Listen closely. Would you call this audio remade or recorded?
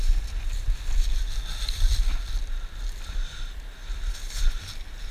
recorded